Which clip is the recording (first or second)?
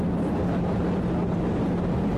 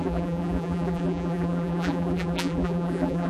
first